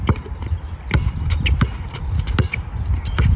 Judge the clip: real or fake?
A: real